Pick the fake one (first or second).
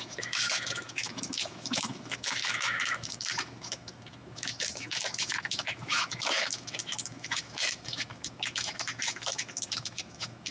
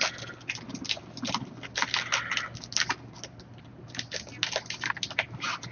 first